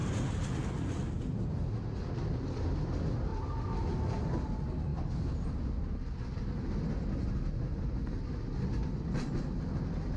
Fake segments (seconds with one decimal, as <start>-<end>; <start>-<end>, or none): none